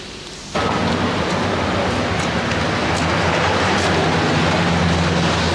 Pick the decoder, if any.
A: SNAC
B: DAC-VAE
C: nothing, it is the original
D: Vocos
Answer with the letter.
C